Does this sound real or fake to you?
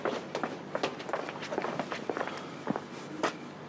real